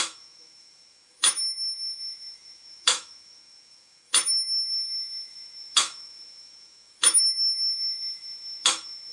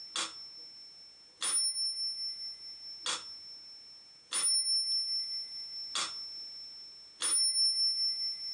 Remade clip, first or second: first